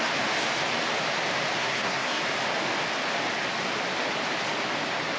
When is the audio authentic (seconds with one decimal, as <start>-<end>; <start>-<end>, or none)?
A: 0.0-1.6; 2.2-5.2